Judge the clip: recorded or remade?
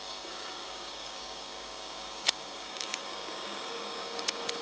remade